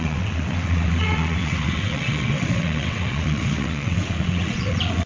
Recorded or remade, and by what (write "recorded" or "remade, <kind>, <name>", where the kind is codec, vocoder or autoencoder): remade, vocoder, WaveNeXt